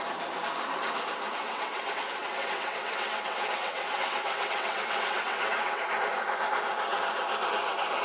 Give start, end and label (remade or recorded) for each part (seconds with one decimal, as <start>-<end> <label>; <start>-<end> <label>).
0.0-1.4 recorded; 1.4-5.8 remade; 5.8-8.0 recorded